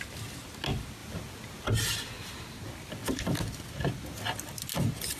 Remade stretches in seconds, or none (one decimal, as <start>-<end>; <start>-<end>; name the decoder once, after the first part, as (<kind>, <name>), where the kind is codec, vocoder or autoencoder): none